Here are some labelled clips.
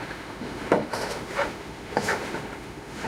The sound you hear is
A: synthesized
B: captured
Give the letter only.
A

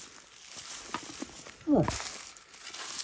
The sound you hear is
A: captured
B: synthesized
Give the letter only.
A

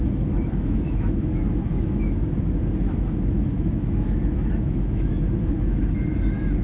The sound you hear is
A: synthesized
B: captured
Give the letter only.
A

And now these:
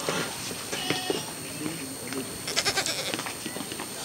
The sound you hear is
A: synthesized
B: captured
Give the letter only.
B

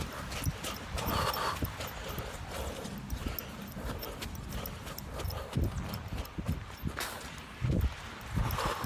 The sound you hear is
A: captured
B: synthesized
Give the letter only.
A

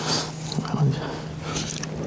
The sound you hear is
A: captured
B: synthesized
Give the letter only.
A